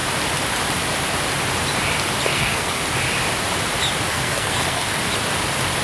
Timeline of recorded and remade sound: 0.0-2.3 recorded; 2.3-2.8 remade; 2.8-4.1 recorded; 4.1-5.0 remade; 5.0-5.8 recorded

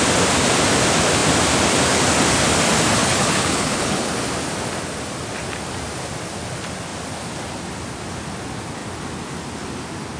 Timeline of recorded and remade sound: 0.0-3.0 recorded; 3.0-4.1 remade; 4.1-10.2 recorded

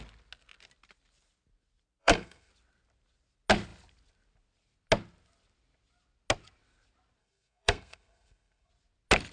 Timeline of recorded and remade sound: 0.0-2.0 recorded; 2.0-2.5 remade; 2.5-7.2 recorded; 7.2-8.7 remade; 8.7-9.3 recorded

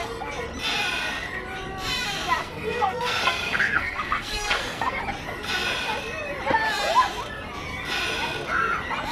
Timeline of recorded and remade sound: 0.0-2.4 recorded; 2.4-5.0 remade; 5.0-9.1 recorded

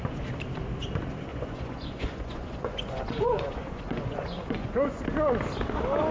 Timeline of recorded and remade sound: 0.0-1.3 recorded; 1.3-5.0 remade; 5.0-6.1 recorded

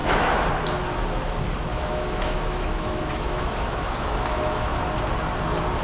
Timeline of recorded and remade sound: 0.0-0.5 remade; 0.5-1.7 recorded; 1.7-4.8 remade; 4.8-5.8 recorded

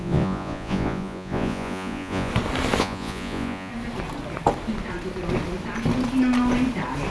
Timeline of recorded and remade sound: 0.0-2.3 remade; 2.3-2.8 recorded; 2.8-3.7 remade; 3.7-7.1 recorded

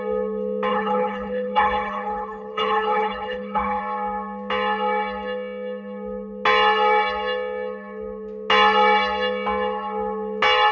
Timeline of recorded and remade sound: 0.0-0.7 recorded; 0.7-3.8 remade; 3.8-10.7 recorded